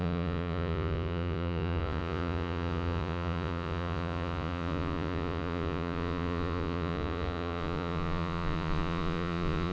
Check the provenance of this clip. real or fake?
fake